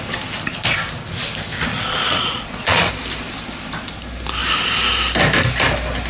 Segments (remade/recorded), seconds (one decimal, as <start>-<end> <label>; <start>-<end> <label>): 0.0-1.7 recorded; 1.7-2.9 remade; 2.9-6.1 recorded